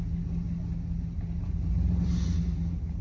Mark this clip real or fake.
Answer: real